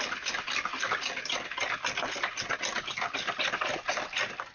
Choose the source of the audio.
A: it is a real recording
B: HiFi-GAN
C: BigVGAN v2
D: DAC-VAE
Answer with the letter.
A